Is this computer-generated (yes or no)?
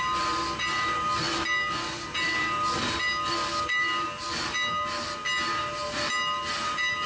no